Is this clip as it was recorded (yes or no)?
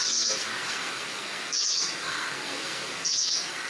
no